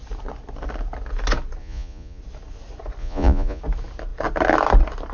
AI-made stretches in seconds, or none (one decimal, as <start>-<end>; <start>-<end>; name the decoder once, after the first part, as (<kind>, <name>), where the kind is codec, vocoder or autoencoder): 1.6-2.2 (vocoder, Vocos); 3.0-3.6